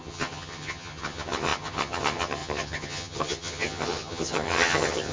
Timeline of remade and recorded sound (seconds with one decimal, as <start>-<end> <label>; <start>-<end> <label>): 0.0-5.1 remade